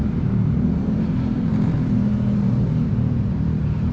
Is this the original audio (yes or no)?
no